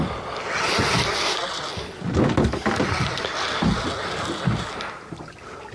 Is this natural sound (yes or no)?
yes